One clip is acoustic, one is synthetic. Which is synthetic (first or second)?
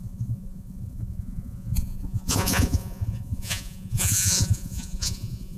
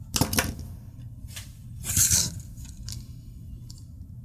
first